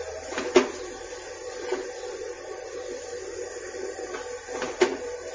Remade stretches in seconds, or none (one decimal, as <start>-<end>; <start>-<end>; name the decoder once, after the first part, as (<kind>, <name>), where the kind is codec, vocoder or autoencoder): none